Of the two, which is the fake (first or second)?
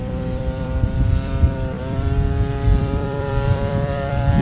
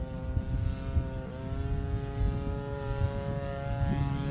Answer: first